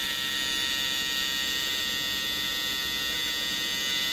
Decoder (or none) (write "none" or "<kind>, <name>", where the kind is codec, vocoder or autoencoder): none